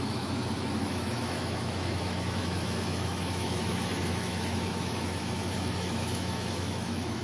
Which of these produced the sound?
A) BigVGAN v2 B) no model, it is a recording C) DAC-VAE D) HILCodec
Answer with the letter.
C